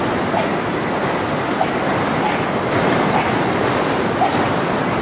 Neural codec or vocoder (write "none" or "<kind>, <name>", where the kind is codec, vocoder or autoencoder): none